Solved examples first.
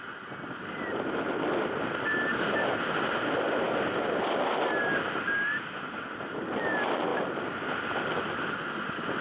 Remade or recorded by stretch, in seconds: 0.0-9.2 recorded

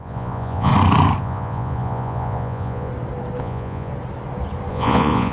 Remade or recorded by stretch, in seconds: 0.0-0.7 remade; 0.7-1.2 recorded; 1.2-2.9 remade; 2.9-3.4 recorded; 3.4-3.9 remade; 3.9-4.7 recorded; 4.7-5.3 remade

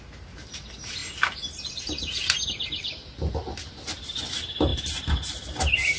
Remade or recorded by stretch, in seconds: 0.0-6.0 recorded

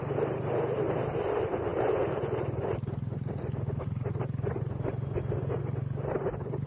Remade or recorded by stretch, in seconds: 0.0-6.7 recorded

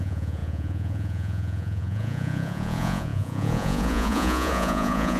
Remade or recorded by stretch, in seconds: 0.0-5.2 remade

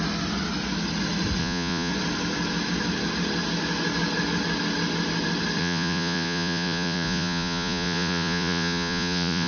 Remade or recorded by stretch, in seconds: 0.0-1.4 recorded; 1.4-1.9 remade; 1.9-5.6 recorded; 5.6-9.5 remade